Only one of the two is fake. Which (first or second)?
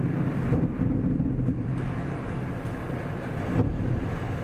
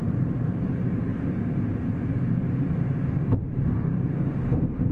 second